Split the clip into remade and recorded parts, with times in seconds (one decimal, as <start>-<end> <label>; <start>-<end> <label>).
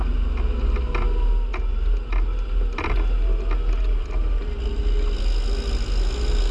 0.0-6.5 recorded